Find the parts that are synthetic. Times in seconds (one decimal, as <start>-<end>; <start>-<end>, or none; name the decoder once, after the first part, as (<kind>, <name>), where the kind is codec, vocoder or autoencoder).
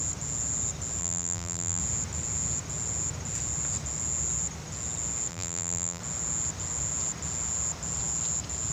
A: 1.0-1.8 (vocoder, BigVGAN v2); 5.3-6.0